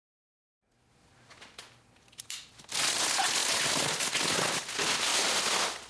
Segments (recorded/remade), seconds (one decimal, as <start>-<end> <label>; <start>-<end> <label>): 0.0-5.9 recorded